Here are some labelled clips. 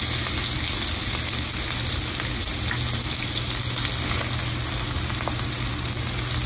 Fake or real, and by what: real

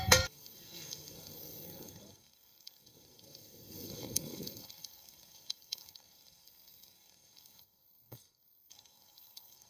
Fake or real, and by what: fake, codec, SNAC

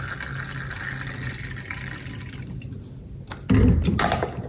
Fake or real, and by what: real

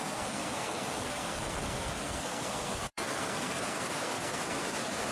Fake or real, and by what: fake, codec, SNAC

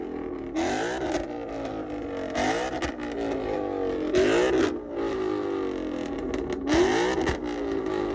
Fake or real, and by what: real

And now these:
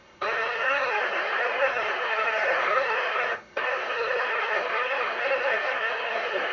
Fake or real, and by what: fake, codec, SNAC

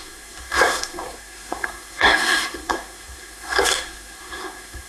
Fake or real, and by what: fake, codec, SNAC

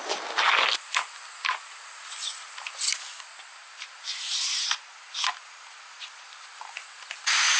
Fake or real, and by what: real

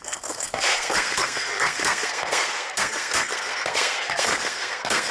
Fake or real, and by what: fake, codec, SNAC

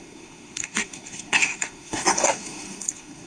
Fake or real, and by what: fake, codec, SNAC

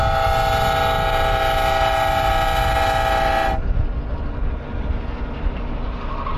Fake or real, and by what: real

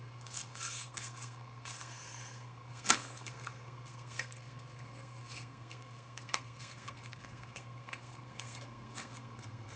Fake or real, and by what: fake, codec, SNAC